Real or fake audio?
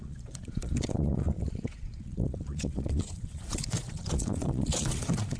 fake